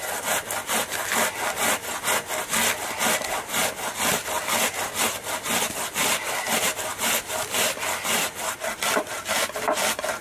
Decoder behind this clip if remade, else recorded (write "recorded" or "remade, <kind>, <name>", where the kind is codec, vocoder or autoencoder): recorded